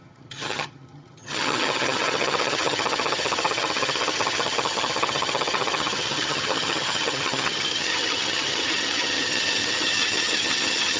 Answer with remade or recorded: remade